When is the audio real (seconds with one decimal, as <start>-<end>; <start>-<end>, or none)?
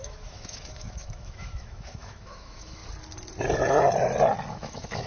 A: 2.8-4.5